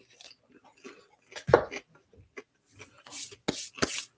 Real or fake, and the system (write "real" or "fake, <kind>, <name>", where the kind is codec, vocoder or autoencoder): real